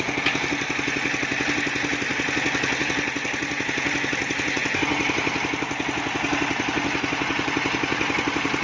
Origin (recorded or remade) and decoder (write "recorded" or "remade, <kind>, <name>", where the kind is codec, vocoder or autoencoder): recorded